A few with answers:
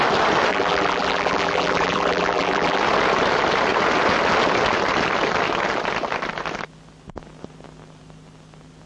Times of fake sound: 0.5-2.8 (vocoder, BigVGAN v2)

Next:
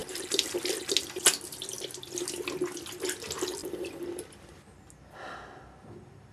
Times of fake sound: 0.0-0.6 (vocoder, BigVGAN v2); 3.6-4.6

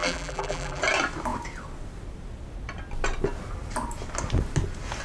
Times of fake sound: 0.0-0.8 (vocoder, BigVGAN v2)

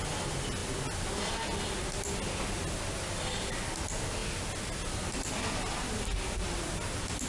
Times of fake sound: none

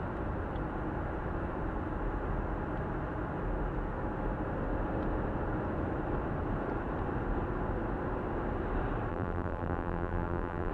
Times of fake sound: 9.1-10.7 (vocoder, BigVGAN v2)